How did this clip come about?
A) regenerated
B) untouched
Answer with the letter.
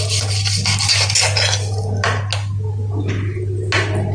B